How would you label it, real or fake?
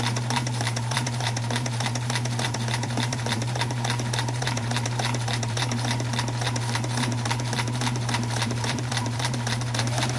fake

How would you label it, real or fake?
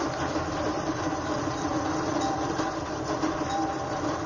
fake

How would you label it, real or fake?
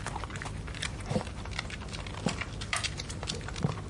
real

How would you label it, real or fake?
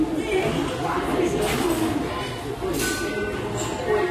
real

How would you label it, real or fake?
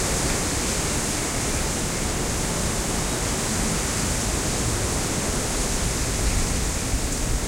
real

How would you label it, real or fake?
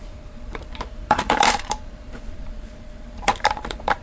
fake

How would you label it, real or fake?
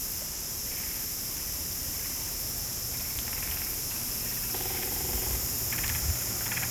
fake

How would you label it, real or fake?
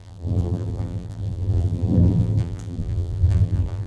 fake